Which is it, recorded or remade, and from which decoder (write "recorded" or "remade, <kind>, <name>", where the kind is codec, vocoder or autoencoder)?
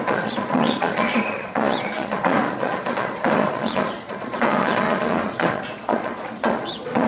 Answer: remade, vocoder, Vocos